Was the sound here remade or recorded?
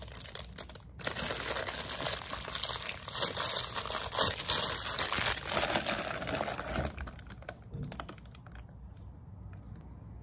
recorded